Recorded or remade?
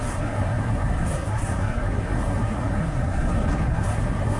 remade